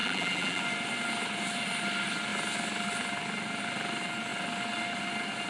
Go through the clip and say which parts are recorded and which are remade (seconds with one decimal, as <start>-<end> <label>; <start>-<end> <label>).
0.0-0.6 remade; 0.6-5.5 recorded